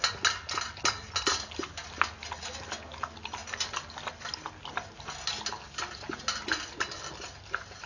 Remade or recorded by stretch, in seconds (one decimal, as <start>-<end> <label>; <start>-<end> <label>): 0.0-7.9 recorded